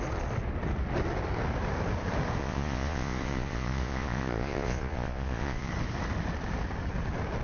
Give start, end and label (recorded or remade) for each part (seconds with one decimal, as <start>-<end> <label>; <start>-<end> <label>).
0.0-2.4 recorded; 2.4-5.7 remade; 5.7-7.4 recorded